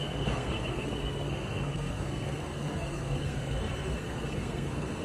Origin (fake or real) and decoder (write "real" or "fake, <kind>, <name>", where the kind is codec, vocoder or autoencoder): fake, codec, SNAC